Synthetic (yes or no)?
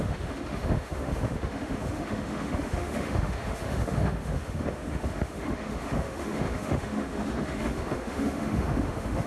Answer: yes